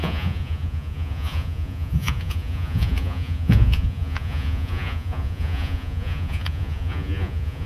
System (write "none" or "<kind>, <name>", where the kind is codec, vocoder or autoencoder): vocoder, Vocos